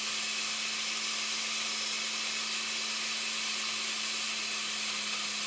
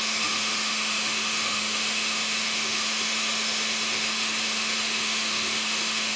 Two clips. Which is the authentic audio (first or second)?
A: first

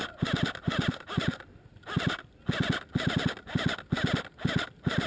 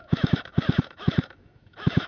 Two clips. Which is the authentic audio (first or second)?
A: first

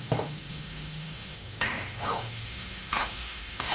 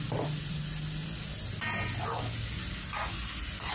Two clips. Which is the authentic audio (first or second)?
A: second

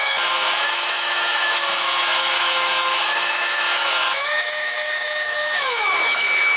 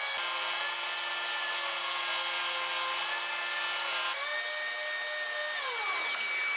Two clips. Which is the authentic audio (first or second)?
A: second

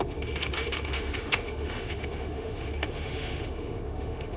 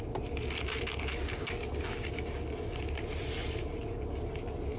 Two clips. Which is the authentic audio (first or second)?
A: second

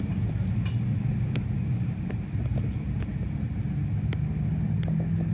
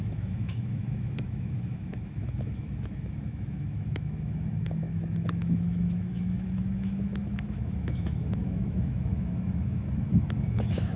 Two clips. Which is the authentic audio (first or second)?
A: first